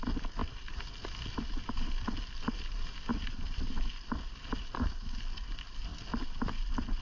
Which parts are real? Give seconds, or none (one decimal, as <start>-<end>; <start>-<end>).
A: 0.0-0.4; 1.0-3.1; 3.7-4.6; 5.1-7.0